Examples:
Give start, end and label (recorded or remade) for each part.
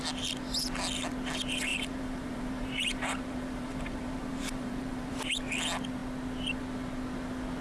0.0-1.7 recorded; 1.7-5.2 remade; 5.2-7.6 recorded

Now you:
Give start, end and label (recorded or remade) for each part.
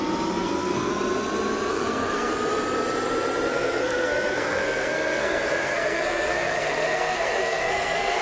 0.0-0.4 recorded; 0.4-0.9 remade; 0.9-1.7 recorded; 1.7-2.3 remade; 2.3-3.5 recorded; 3.5-8.2 remade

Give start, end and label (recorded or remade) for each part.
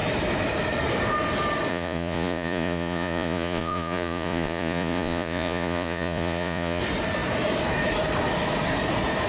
0.0-1.7 recorded; 1.7-6.8 remade; 6.8-9.3 recorded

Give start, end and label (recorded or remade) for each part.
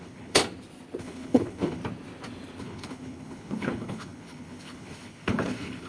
0.0-0.4 remade; 0.4-1.0 recorded; 1.0-1.8 remade; 1.8-2.6 recorded; 2.6-5.9 remade